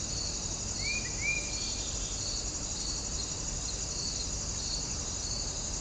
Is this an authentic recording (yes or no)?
yes